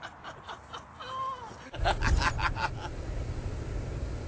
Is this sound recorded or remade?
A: recorded